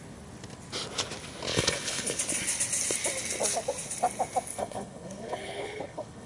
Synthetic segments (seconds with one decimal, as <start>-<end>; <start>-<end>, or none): 1.5-2.2; 4.5-6.3